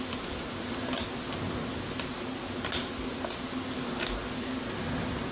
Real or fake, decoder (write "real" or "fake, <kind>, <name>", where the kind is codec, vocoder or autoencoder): real